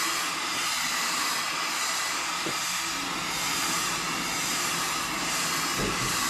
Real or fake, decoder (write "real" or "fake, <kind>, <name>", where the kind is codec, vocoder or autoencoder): real